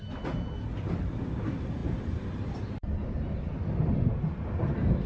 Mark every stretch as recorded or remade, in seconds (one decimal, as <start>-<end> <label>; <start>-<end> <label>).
0.0-0.7 recorded; 0.7-1.2 remade; 1.2-1.8 recorded; 1.8-2.7 remade; 2.7-5.1 recorded